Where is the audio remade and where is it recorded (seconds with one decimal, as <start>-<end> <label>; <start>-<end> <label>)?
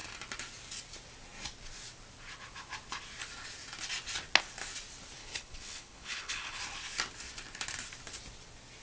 0.0-5.2 recorded; 5.2-6.6 remade; 6.6-8.8 recorded